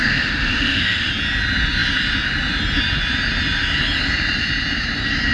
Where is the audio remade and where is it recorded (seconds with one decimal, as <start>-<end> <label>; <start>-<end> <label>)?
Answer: 0.0-1.1 remade; 1.1-5.3 recorded